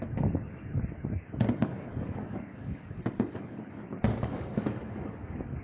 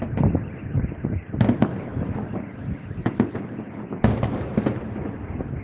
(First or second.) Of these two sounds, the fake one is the first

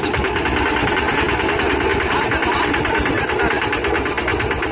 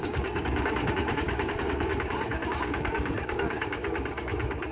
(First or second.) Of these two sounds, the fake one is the second